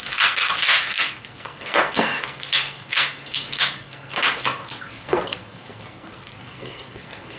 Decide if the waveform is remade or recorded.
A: remade